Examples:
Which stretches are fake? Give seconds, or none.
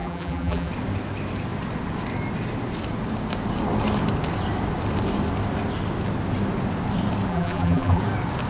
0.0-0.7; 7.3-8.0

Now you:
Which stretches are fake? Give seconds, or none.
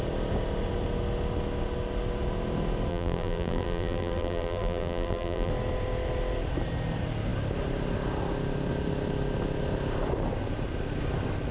2.9-5.5